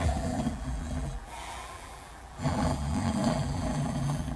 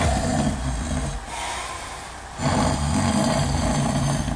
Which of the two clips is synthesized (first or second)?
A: first